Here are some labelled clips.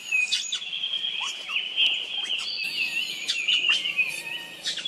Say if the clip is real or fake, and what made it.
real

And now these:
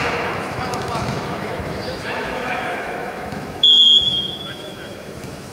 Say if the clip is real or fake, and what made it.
fake, autoencoder, DAC-VAE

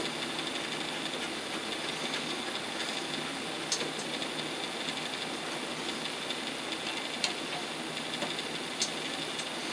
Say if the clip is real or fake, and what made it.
real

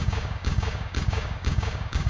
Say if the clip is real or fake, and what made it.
fake, codec, DAC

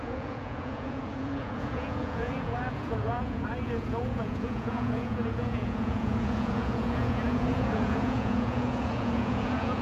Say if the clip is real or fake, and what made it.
fake, vocoder, Vocos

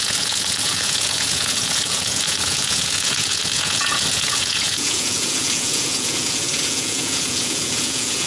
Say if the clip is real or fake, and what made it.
fake, vocoder, Vocos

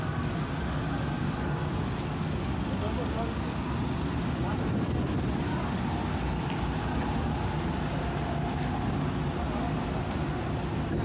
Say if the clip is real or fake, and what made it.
real